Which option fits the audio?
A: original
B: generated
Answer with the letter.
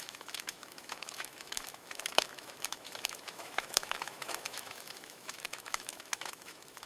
B